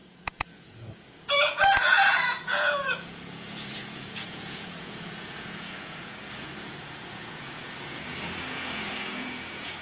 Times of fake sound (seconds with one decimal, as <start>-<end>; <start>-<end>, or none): 0.0-9.8